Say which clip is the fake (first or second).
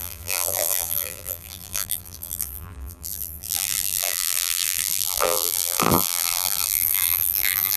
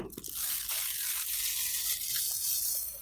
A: first